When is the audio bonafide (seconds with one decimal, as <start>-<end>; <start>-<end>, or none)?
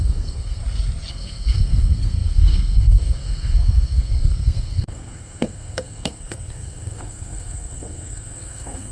0.6-1.1